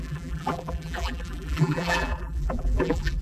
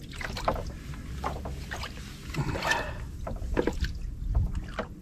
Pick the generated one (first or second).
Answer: first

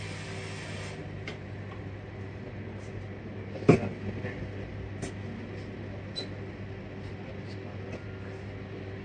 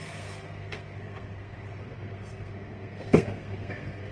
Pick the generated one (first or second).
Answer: second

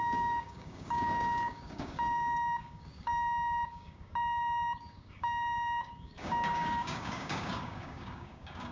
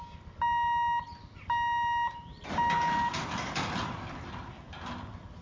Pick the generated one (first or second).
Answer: first